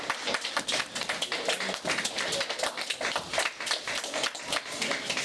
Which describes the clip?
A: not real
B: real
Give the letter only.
B